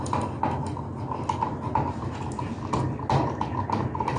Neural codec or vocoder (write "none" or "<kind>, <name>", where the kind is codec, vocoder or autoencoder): none